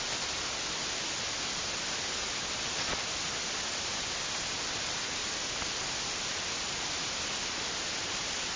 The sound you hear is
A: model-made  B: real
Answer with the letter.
B